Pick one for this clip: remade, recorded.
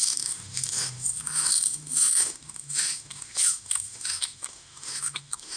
remade